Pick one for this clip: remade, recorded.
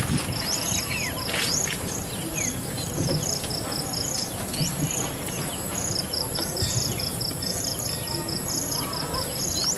remade